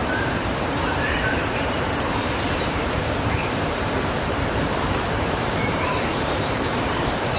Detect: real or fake fake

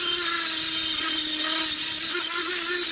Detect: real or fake real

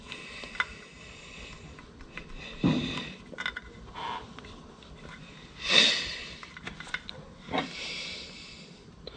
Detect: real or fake real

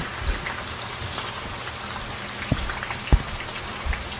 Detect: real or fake fake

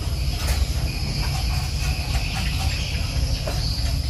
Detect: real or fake real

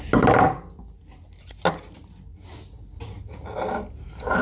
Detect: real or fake real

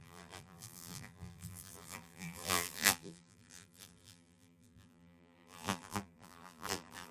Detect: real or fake fake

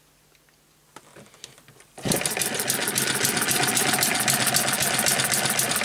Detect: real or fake real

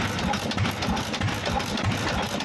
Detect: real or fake real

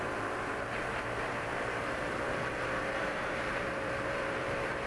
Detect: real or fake fake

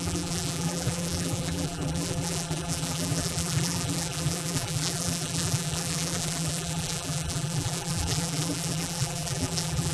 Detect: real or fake fake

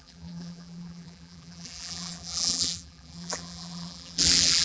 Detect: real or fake fake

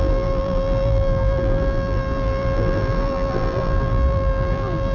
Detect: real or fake fake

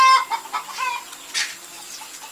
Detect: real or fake real